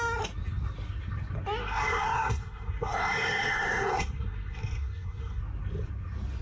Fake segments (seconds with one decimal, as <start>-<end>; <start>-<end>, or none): 1.6-5.4